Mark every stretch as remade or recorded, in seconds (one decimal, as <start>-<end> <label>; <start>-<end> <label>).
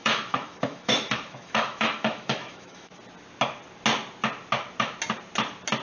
0.0-2.9 remade; 2.9-5.8 recorded